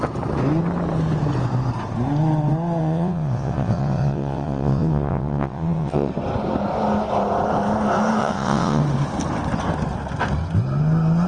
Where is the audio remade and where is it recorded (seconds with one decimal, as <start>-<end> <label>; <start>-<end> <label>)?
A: 0.0-2.8 recorded; 2.8-6.1 remade; 6.1-8.2 recorded; 8.2-8.8 remade; 8.8-11.3 recorded